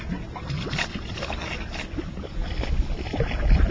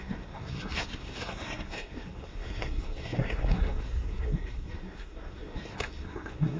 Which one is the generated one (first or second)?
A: second